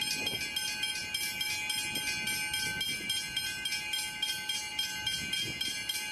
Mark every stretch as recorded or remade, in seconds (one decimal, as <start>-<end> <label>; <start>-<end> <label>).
0.0-6.1 recorded